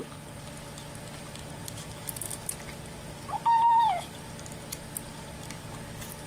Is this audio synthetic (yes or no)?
no